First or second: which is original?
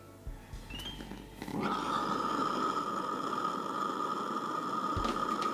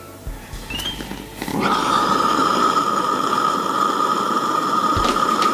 first